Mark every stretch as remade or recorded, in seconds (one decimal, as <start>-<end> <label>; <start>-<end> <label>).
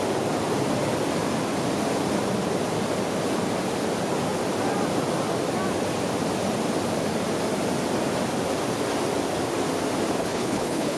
0.0-10.2 recorded; 10.2-11.0 remade